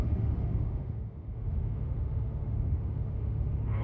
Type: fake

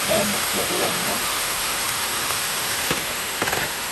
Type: fake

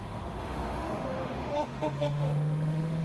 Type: fake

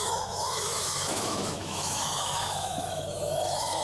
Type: fake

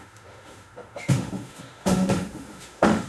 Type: fake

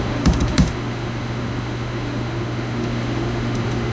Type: fake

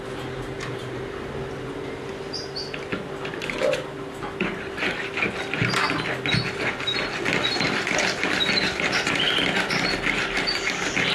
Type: real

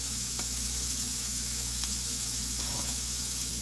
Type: fake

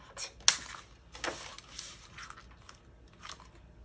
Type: real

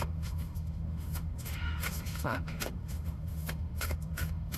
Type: fake